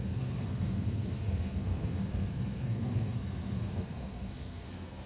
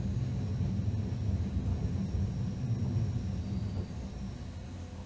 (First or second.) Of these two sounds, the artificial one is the first